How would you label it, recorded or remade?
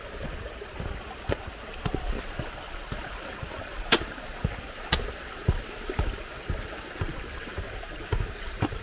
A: remade